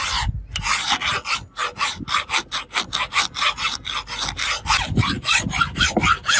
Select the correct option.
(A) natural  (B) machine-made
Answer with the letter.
A